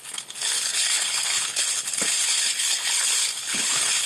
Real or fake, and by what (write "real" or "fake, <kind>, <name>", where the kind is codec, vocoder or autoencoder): fake, codec, HILCodec